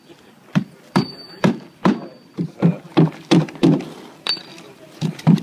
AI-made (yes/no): yes